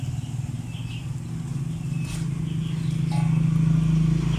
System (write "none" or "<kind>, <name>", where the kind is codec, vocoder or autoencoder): none